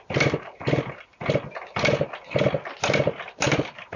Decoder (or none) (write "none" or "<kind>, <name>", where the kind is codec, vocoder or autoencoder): none